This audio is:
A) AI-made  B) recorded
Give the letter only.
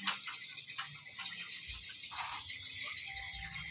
B